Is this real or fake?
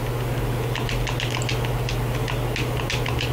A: real